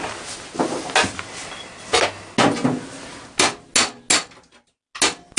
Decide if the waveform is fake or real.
real